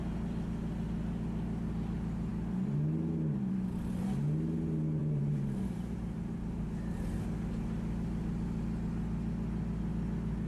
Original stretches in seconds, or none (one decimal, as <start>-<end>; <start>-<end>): 0.0-5.0; 6.7-10.5